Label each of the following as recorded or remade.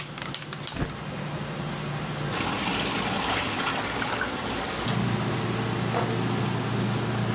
recorded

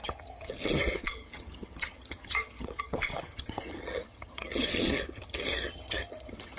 remade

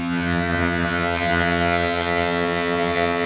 remade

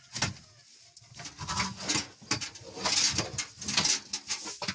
recorded